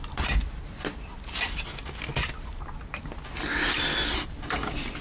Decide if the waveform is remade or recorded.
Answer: recorded